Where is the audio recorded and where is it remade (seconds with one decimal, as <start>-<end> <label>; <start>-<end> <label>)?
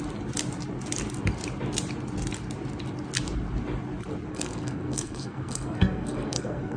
0.0-4.3 recorded; 4.3-6.8 remade